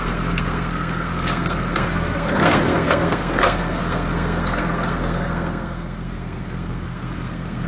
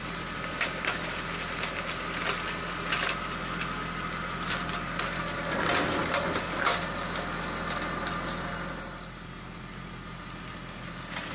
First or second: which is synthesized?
first